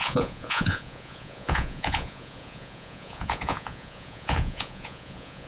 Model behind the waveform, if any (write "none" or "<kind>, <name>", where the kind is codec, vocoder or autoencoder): vocoder, Vocos